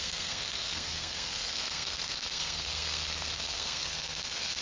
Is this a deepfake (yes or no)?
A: yes